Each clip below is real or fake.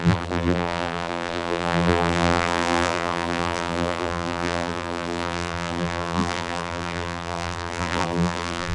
fake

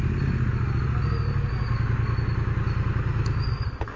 real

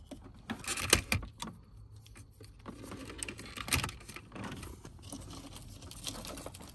real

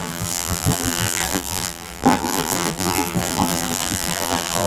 fake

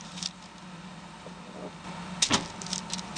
real